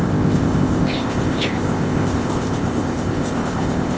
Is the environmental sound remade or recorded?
remade